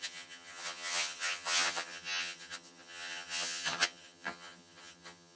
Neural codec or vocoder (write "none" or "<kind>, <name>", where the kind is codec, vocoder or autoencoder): vocoder, HiFi-GAN